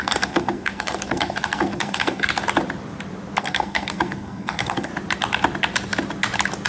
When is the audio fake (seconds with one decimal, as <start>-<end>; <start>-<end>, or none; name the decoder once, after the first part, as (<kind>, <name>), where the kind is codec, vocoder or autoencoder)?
0.0-2.4 (codec, SNAC); 3.4-4.9